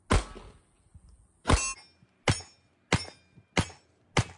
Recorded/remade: recorded